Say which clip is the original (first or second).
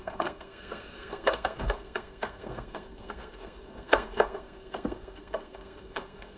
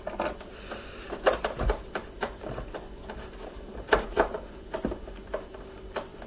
second